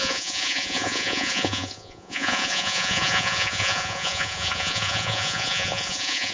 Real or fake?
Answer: fake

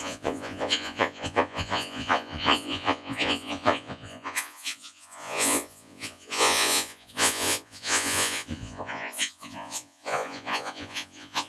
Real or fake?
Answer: fake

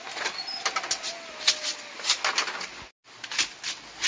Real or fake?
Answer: real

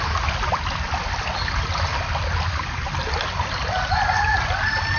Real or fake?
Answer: real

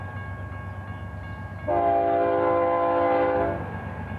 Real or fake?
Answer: real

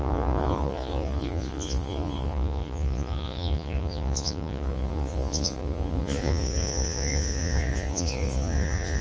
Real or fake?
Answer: fake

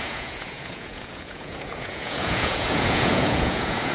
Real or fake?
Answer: fake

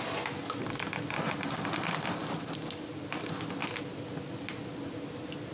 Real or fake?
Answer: real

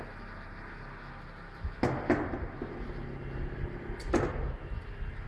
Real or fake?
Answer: real